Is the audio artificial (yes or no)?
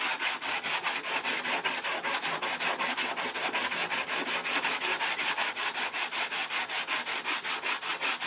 no